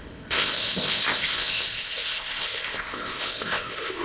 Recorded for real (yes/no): no